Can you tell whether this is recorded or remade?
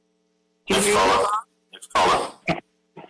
recorded